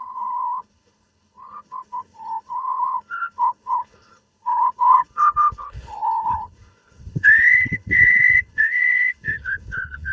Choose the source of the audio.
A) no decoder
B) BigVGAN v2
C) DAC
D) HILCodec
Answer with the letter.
D